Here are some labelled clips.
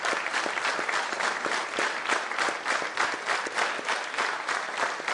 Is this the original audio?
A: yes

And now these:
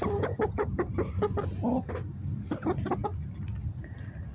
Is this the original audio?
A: yes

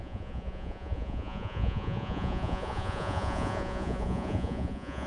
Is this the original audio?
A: no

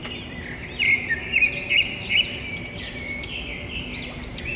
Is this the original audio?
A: yes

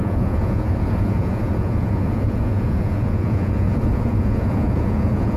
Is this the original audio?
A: no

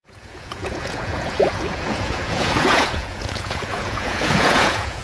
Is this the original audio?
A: no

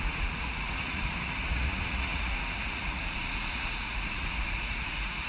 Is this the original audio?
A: no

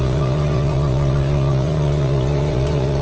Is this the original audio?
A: no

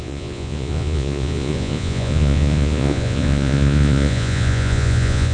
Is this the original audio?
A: no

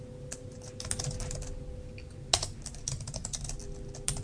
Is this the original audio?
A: yes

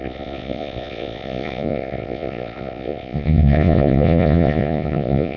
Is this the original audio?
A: no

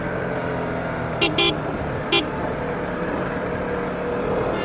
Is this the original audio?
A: yes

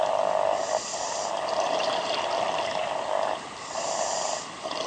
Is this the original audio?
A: yes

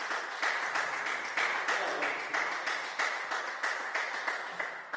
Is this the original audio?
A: yes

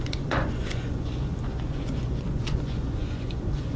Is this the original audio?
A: no